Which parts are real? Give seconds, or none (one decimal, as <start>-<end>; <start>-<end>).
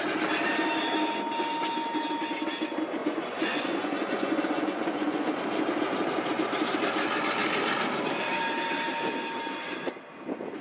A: 0.0-3.0; 5.3-10.6